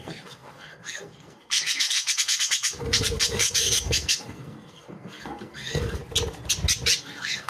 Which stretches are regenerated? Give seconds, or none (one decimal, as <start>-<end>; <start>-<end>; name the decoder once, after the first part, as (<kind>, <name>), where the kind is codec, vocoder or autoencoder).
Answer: 0.0-6.0 (codec, SNAC); 7.0-7.5